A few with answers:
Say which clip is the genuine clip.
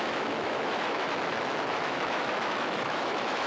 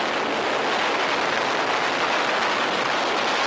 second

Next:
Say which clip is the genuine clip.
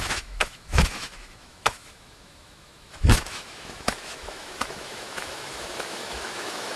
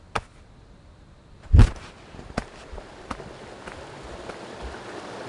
second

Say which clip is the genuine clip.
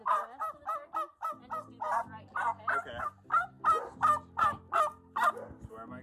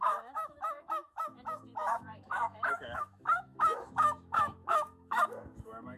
first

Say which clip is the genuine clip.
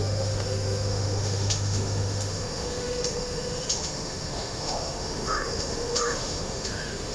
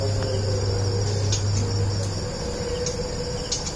second